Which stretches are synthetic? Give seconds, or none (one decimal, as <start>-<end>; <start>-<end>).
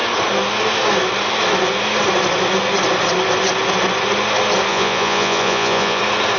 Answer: 4.7-6.0